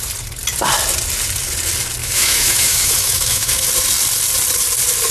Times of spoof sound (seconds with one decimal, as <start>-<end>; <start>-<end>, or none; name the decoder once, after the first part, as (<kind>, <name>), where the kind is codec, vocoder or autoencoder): 2.0-3.7 (autoencoder, DAC-VAE)